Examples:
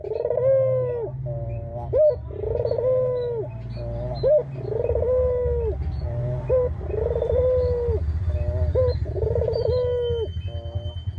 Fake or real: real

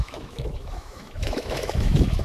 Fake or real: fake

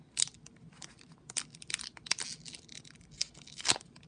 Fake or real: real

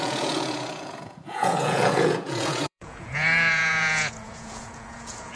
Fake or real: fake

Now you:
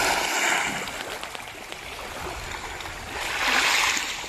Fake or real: real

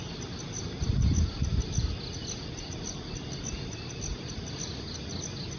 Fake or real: real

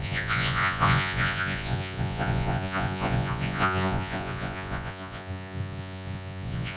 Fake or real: fake